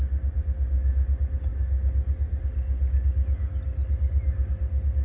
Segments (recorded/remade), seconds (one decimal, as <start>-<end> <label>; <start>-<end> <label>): 0.0-5.0 recorded